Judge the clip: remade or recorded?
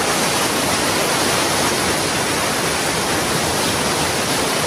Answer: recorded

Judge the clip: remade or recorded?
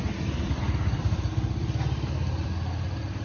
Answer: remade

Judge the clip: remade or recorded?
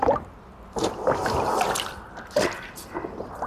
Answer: recorded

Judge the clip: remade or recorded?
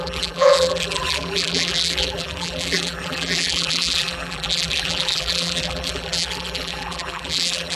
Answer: remade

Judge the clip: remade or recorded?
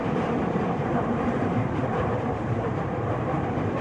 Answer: remade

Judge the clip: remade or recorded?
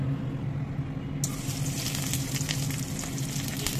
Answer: recorded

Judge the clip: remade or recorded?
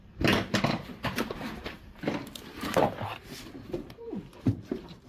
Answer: remade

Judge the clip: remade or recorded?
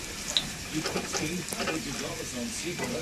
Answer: recorded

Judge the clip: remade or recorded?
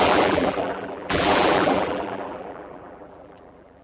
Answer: remade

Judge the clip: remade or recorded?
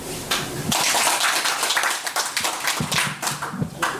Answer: remade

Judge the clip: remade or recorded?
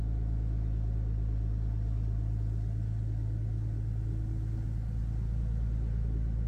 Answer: recorded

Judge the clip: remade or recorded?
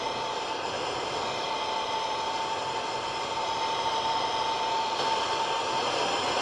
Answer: remade